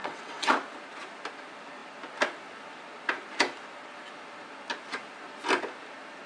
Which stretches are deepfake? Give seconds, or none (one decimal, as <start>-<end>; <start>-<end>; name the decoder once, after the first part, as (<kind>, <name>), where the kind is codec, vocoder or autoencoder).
0.0-0.5 (vocoder, WaveNeXt)